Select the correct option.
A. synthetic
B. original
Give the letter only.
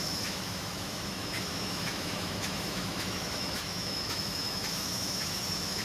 A